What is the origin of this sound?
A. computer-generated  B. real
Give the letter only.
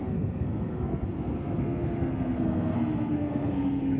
A